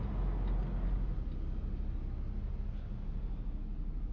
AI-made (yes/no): no